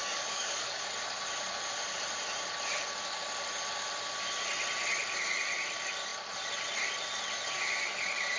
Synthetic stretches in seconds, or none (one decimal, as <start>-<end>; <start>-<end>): 0.0-0.8